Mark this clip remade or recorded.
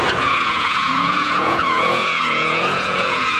remade